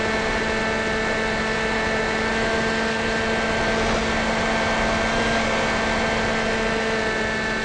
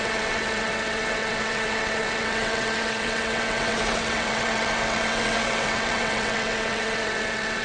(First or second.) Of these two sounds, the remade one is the second